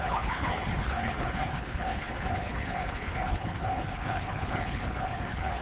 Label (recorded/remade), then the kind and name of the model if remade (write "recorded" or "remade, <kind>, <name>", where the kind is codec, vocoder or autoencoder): remade, codec, HILCodec